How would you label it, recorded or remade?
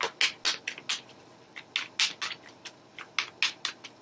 recorded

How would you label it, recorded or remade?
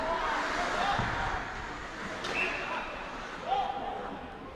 recorded